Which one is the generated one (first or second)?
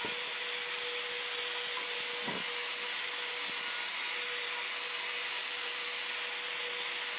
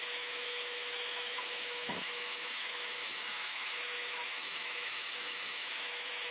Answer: second